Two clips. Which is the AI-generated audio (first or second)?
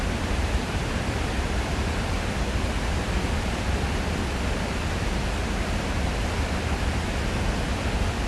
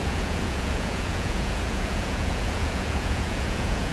second